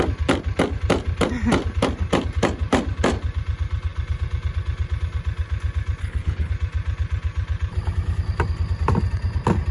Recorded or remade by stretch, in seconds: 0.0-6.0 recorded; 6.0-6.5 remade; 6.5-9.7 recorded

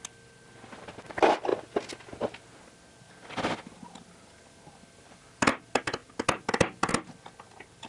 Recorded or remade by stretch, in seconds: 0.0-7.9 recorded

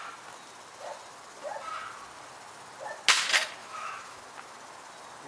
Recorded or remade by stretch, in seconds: 0.0-3.6 recorded; 3.6-4.2 remade; 4.2-5.3 recorded

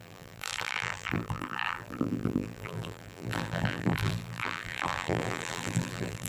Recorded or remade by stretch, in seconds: 0.0-6.3 remade